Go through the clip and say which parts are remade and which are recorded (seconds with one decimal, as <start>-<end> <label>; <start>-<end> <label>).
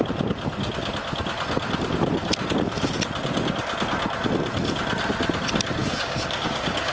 0.0-5.8 recorded; 5.8-6.9 remade